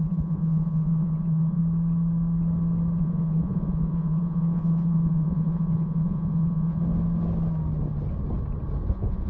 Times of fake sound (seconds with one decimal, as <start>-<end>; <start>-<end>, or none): 0.0-1.6; 3.0-6.8; 8.9-9.3